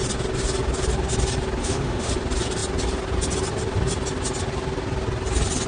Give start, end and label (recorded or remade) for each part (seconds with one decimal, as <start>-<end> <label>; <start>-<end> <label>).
0.0-1.6 recorded; 1.6-2.1 remade; 2.1-5.7 recorded